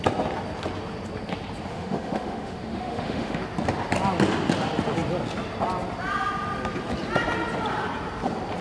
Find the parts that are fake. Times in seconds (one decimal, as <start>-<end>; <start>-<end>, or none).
1.7-3.4